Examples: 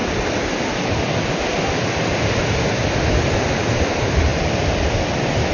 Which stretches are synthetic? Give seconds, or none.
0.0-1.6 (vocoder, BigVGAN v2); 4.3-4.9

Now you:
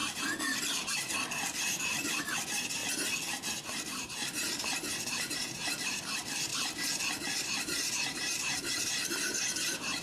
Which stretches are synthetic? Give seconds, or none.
2.2-2.8 (vocoder, BigVGAN v2); 3.3-6.5; 7.1-10.0

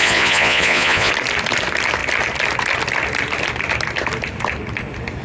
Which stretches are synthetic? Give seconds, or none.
0.0-1.1 (vocoder, Vocos)